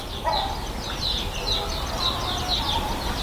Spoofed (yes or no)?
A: no